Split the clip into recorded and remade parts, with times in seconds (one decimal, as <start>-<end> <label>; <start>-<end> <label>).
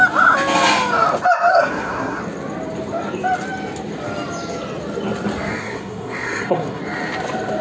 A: 0.0-1.5 recorded; 1.5-2.2 remade; 2.2-5.6 recorded; 5.6-6.8 remade; 6.8-7.6 recorded